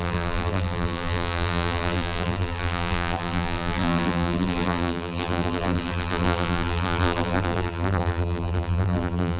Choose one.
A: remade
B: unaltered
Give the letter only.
A